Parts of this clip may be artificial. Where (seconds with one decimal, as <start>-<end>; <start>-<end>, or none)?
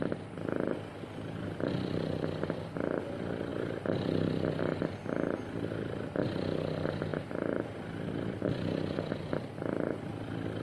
none